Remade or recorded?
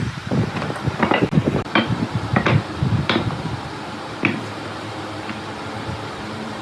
remade